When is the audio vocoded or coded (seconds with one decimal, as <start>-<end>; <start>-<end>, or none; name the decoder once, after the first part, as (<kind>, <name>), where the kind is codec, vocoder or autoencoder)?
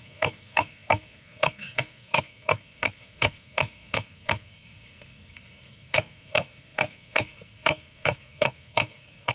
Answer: 0.0-9.3 (codec, SNAC)